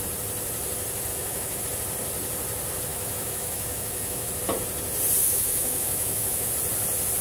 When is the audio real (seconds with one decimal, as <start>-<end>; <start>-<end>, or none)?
0.0-1.1; 1.6-2.9; 4.3-5.2; 6.5-7.2